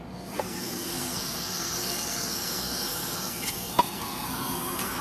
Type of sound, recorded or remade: remade